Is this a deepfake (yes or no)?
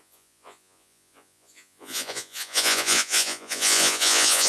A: yes